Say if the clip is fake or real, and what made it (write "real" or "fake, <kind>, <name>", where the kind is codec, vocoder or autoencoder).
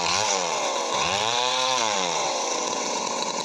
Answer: fake, vocoder, WaveNeXt